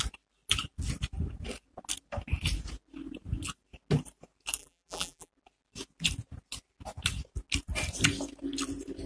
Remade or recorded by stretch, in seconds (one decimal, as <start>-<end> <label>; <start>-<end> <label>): 0.0-4.6 recorded; 4.6-5.3 remade; 5.3-9.1 recorded